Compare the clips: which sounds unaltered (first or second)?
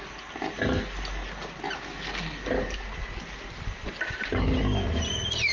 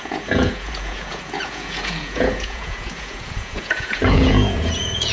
first